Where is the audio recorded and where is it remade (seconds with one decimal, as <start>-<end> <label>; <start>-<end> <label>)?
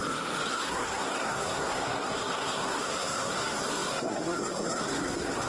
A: 0.0-0.5 recorded; 0.5-5.5 remade